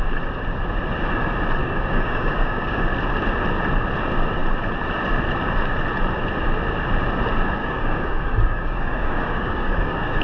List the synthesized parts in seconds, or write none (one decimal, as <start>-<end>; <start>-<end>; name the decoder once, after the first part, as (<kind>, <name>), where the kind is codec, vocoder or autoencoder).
1.6-2.8 (codec, DAC); 7.6-10.2